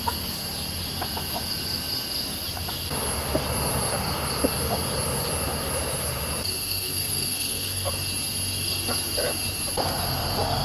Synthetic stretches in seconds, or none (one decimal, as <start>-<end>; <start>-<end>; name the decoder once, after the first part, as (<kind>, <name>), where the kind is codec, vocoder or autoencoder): 6.6-7.9 (codec, SNAC)